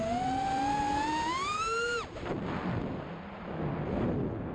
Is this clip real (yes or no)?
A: yes